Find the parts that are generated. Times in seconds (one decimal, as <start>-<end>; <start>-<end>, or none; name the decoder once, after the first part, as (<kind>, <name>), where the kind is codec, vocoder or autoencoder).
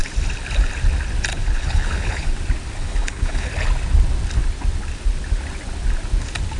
1.3-2.3 (codec, HILCodec); 2.8-3.5